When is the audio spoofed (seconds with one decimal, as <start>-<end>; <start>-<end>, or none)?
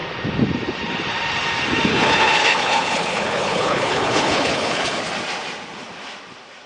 1.9-5.0